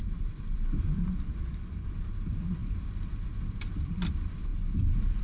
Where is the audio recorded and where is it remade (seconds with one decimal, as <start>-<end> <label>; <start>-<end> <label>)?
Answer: 0.0-1.0 remade; 1.0-1.9 recorded; 1.9-4.5 remade; 4.5-5.2 recorded